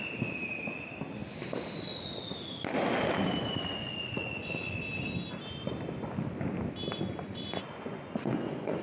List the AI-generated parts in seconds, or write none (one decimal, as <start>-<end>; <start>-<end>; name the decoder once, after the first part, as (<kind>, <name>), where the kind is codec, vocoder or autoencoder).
3.5-4.8 (vocoder, Vocos); 7.2-8.8